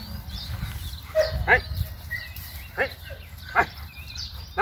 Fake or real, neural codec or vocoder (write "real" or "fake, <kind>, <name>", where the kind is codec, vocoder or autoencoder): real